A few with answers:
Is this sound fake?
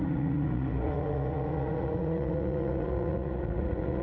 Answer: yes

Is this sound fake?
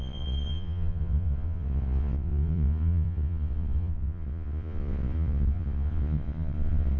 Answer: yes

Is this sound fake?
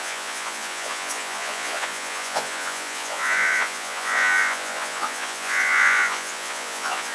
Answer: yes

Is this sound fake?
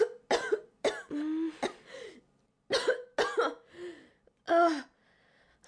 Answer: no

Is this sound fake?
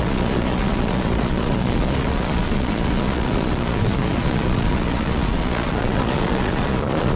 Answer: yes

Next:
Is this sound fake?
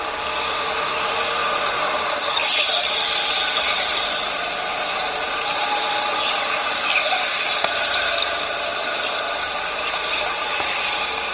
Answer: no